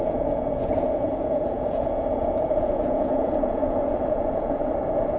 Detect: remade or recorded remade